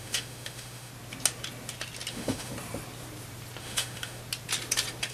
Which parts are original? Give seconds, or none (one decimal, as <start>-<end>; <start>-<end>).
0.9-2.1; 2.5-3.6; 4.2-5.1